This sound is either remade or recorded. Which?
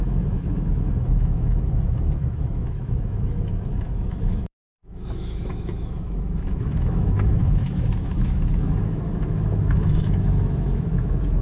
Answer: remade